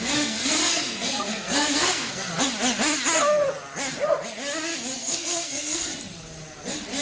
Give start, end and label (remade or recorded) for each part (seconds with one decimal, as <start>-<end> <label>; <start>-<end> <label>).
0.0-2.3 remade; 2.3-5.0 recorded; 5.0-5.9 remade; 5.9-7.0 recorded